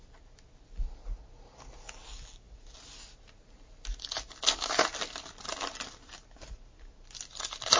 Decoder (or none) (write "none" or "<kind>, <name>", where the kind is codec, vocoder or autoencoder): none